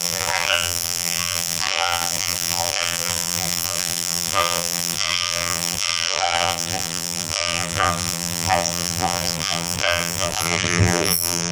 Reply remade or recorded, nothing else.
remade